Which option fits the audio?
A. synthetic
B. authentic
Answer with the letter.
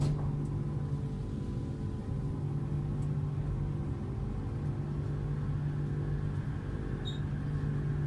B